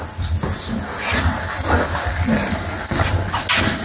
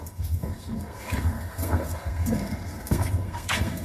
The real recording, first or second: first